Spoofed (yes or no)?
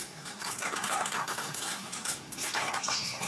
yes